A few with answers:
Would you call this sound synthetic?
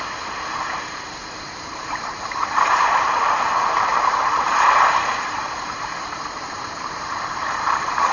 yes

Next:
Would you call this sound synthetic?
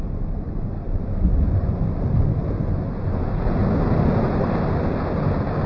no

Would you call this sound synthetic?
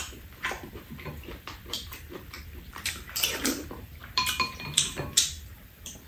yes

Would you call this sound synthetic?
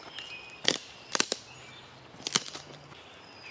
yes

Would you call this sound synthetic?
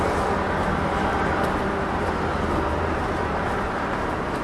yes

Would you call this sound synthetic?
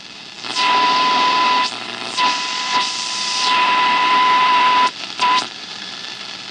yes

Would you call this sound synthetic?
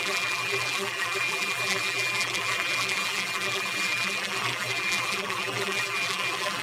yes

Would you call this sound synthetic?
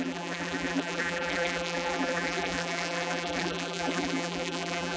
yes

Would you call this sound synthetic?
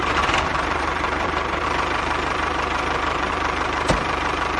yes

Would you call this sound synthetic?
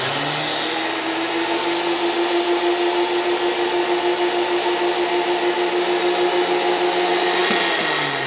no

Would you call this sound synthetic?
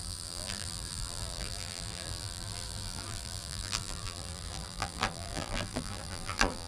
yes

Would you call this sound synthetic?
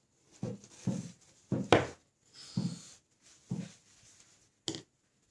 no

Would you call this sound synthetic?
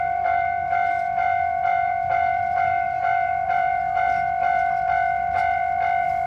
yes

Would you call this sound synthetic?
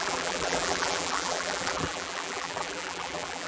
yes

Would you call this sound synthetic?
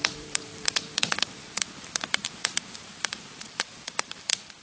yes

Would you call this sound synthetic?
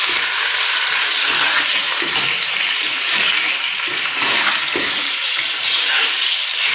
yes